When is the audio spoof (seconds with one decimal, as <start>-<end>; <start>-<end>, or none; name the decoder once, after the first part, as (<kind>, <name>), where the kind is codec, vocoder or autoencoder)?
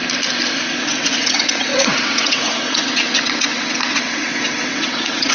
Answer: 0.8-5.3 (vocoder, WaveNeXt)